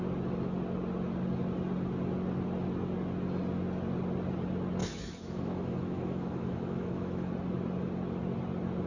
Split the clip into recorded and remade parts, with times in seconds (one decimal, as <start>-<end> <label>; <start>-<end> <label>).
0.0-4.8 recorded; 4.8-7.3 remade; 7.3-8.9 recorded